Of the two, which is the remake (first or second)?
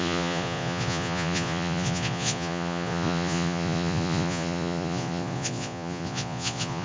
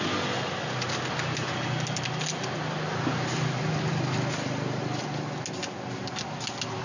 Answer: first